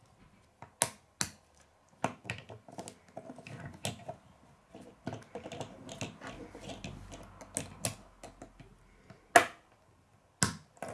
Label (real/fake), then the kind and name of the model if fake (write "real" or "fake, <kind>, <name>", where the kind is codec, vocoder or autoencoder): real